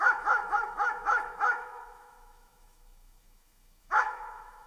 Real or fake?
fake